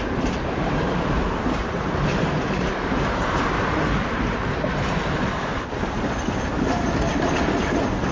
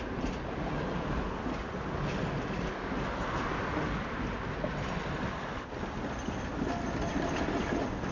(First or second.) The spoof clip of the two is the first